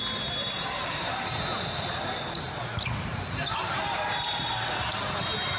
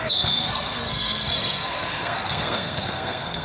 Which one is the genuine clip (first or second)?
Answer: first